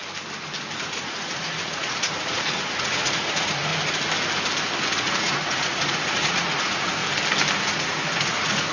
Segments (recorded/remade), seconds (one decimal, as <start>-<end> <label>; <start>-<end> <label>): 0.0-0.8 recorded; 0.8-3.7 remade; 3.7-4.9 recorded; 4.9-7.0 remade; 7.0-7.6 recorded; 7.6-8.7 remade